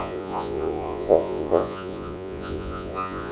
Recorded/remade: remade